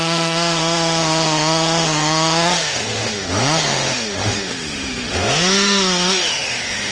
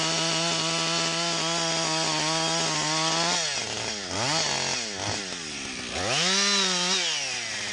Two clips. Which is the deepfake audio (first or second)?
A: first